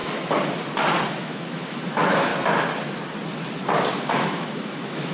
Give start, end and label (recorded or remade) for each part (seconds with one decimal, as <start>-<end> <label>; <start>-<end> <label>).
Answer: 0.0-1.1 recorded; 1.1-2.3 remade; 2.3-3.9 recorded; 3.9-5.1 remade